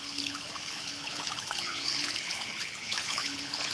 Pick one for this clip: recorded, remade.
remade